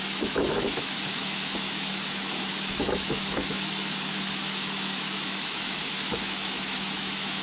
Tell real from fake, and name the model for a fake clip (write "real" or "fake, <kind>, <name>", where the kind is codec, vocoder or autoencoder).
fake, autoencoder, DAC-VAE